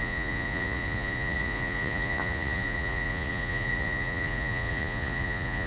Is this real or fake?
fake